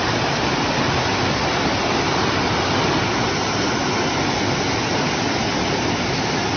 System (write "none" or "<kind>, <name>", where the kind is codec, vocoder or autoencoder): none